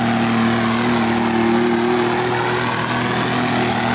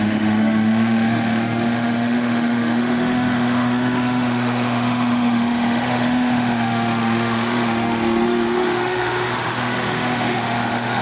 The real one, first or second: first